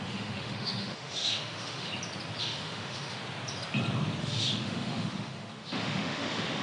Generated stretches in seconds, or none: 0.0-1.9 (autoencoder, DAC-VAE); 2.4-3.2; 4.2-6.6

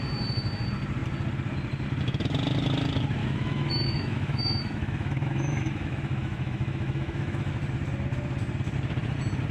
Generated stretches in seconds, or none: 3.2-7.5 (autoencoder, DAC-VAE)

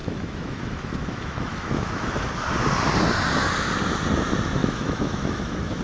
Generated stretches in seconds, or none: 0.0-2.1 (autoencoder, DAC-VAE); 4.6-5.8

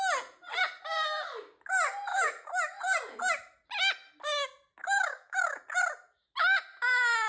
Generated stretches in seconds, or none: 2.1-2.8 (autoencoder, DAC-VAE); 4.8-5.6

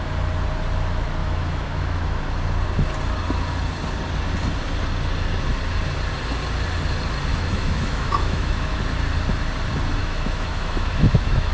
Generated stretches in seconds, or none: 1.2-2.2 (autoencoder, DAC-VAE); 7.3-8.8; 10.0-11.5

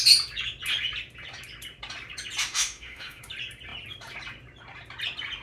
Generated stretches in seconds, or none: 2.4-3.2 (autoencoder, DAC-VAE)

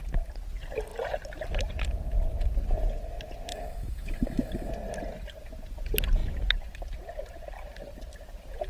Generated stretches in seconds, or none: 3.5-4.7 (autoencoder, DAC-VAE)

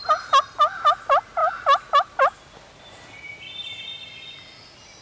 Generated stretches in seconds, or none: none